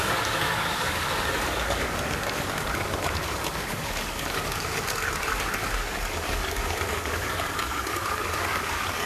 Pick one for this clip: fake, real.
fake